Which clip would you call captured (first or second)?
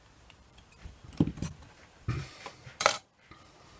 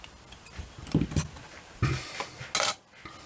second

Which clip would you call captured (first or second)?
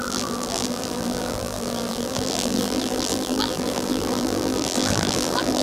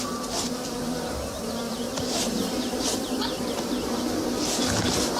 second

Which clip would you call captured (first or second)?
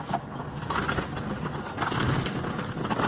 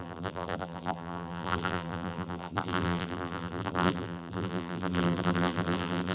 first